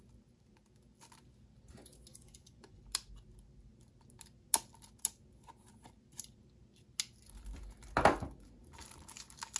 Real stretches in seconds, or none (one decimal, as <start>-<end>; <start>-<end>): 0.0-2.1; 2.8-9.6